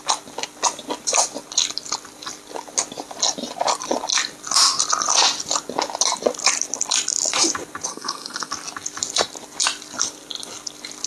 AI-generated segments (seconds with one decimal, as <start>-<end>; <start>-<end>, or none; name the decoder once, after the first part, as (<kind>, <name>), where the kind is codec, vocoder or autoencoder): 7.9-8.5 (codec, SNAC)